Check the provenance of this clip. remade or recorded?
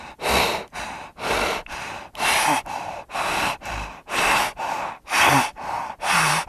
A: recorded